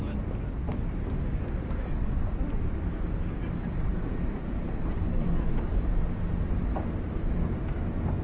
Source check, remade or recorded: recorded